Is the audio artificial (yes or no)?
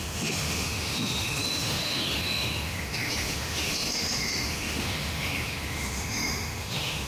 yes